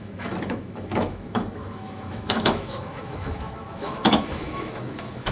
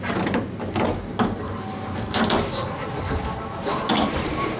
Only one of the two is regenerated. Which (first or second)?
first